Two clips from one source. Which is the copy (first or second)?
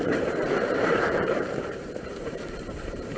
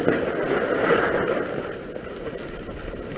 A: first